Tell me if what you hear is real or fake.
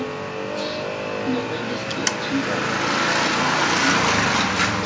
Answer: real